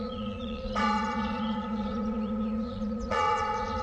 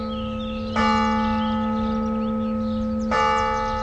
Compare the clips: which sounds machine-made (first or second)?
first